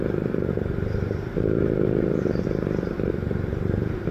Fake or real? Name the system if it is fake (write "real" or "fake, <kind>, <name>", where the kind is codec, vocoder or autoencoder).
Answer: fake, vocoder, BigVGAN v2